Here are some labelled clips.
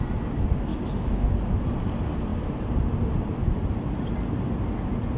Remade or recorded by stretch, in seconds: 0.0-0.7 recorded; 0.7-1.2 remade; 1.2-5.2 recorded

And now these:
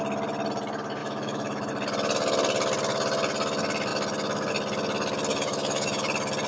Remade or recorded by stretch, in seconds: 0.0-1.0 recorded; 1.0-1.7 remade; 1.7-5.3 recorded; 5.3-6.0 remade; 6.0-6.5 recorded